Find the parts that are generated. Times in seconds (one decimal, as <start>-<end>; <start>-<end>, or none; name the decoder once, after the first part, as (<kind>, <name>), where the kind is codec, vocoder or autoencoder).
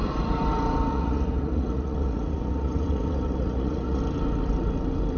0.9-4.0 (vocoder, Vocos)